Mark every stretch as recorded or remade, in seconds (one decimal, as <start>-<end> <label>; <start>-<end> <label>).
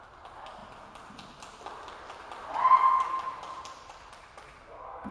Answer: 0.0-5.1 recorded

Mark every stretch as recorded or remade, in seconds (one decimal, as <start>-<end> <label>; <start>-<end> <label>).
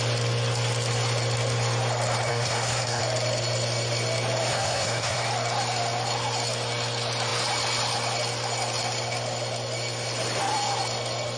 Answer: 0.0-2.3 recorded; 2.3-3.0 remade; 3.0-4.5 recorded; 4.5-5.3 remade; 5.3-11.4 recorded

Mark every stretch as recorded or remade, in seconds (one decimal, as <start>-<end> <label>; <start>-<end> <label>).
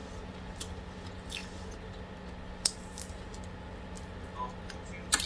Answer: 0.0-5.3 recorded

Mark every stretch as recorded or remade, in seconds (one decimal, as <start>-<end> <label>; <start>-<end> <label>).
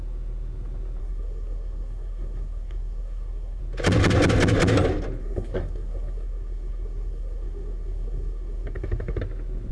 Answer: 0.0-1.0 recorded; 1.0-3.6 remade; 3.6-5.2 recorded; 5.2-9.2 remade; 9.2-9.7 recorded